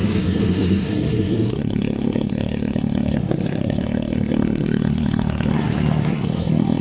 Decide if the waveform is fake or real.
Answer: fake